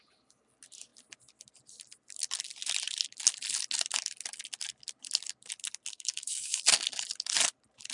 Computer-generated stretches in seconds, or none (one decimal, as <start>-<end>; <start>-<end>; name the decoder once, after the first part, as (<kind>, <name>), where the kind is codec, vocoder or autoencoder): 5.9-6.6 (codec, SNAC)

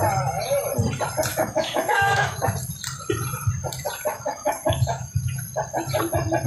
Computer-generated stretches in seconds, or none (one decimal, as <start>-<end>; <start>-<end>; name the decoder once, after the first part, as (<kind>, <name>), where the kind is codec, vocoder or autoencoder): 1.3-2.5 (autoencoder, DAC-VAE); 4.1-5.4

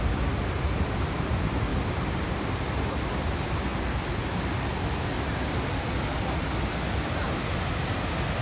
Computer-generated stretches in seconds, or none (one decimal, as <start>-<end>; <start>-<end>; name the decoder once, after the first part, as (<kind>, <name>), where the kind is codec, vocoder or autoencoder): none

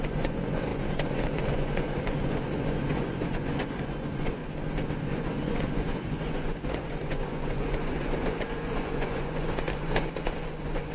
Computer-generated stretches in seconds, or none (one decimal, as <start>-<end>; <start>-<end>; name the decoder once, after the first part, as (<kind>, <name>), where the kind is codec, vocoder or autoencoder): 0.0-4.4 (vocoder, Vocos); 5.0-10.9

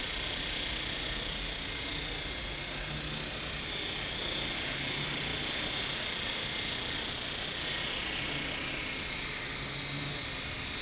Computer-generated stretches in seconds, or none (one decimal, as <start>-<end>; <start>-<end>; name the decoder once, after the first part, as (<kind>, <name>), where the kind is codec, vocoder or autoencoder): none

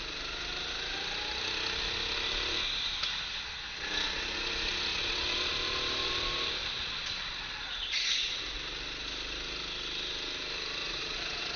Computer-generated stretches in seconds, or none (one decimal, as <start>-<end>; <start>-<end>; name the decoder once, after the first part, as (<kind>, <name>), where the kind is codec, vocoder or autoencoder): 4.9-5.5 (vocoder, Vocos); 6.6-8.4; 10.8-11.6

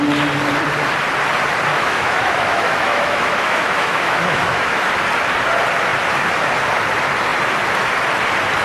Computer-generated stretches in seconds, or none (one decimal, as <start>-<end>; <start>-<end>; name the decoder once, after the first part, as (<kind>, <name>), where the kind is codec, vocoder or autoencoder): 1.7-4.9 (autoencoder, DAC-VAE)

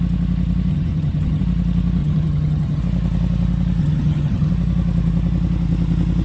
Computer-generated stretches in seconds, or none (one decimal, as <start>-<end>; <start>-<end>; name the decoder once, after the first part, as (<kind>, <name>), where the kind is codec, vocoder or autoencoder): 0.7-1.4 (vocoder, HiFi-GAN); 2.0-2.8; 3.8-4.5